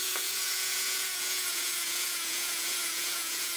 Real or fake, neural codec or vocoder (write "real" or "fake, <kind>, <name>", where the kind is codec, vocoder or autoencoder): fake, vocoder, Vocos